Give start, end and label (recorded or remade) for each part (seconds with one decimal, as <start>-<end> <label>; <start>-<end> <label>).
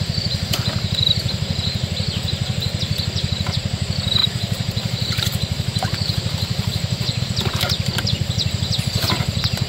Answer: 0.0-4.2 recorded; 4.2-7.2 remade; 7.2-9.7 recorded